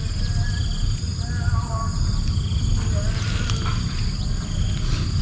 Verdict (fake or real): real